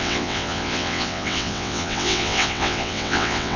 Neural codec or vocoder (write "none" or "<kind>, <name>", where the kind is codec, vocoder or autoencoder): vocoder, WaveNeXt